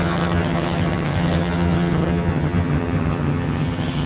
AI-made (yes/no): yes